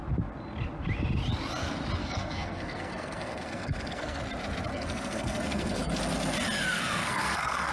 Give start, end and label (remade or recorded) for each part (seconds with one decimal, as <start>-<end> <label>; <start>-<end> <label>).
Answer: 0.0-2.0 recorded; 2.0-4.2 remade; 4.2-4.7 recorded; 4.7-6.0 remade; 6.0-6.7 recorded; 6.7-7.7 remade